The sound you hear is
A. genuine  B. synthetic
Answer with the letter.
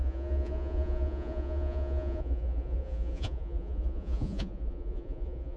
B